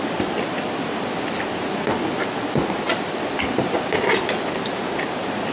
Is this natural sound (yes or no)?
yes